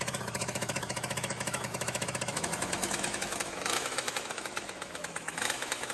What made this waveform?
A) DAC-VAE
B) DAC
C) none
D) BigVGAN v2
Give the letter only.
A